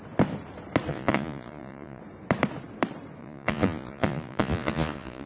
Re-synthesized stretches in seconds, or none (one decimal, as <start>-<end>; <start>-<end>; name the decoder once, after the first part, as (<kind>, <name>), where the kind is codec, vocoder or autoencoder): 0.9-2.0 (vocoder, Vocos); 3.2-5.3